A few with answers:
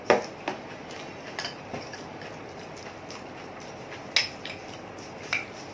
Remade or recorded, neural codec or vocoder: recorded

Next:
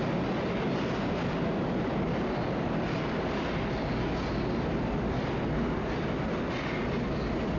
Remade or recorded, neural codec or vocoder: recorded